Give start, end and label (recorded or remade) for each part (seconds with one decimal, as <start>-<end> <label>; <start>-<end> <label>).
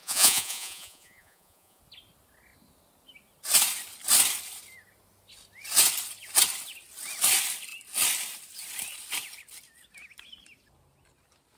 0.0-1.8 remade; 1.8-11.6 recorded